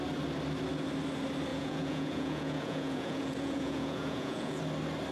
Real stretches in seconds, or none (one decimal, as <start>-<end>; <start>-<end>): 0.0-1.5; 4.6-5.1